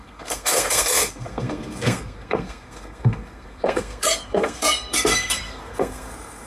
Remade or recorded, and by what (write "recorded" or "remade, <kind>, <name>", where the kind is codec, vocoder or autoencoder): remade, codec, SNAC